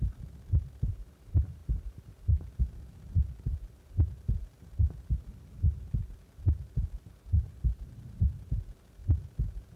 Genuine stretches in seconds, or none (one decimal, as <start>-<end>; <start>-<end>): 0.0-9.8